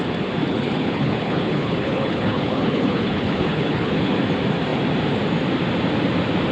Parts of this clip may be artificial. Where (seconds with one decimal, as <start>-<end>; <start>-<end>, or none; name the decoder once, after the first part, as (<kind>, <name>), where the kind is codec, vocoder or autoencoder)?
0.5-4.1 (codec, HILCodec)